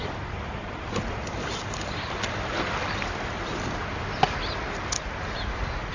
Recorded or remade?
recorded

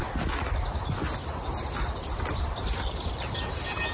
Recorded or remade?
recorded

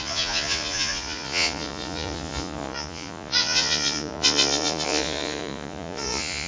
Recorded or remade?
remade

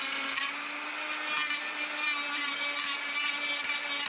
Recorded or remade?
recorded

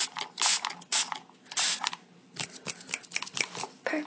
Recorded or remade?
recorded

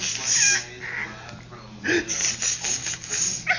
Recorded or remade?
recorded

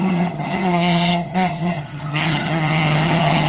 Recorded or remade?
remade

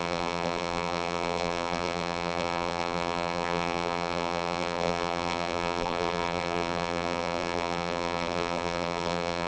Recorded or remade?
remade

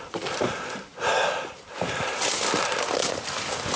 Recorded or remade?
recorded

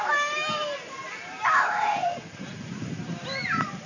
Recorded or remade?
recorded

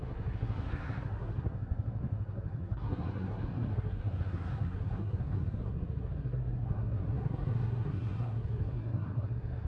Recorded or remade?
remade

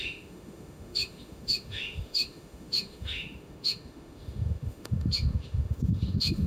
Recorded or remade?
remade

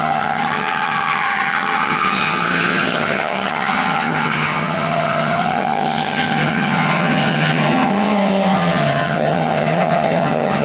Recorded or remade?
remade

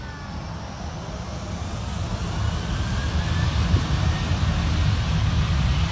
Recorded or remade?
recorded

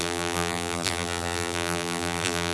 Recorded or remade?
remade